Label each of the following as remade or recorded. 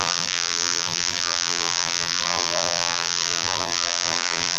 remade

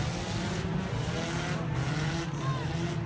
recorded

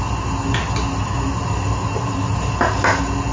recorded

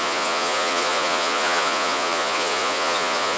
remade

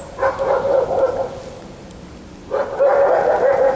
recorded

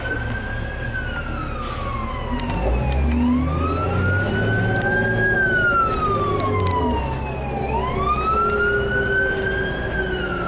recorded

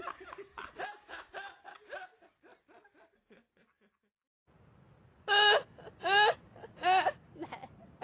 recorded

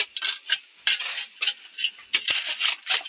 recorded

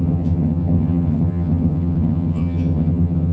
remade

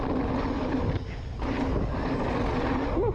recorded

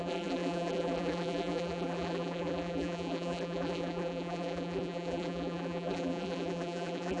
remade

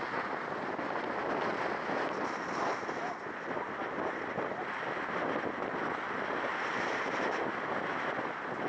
recorded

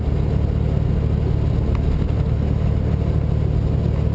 recorded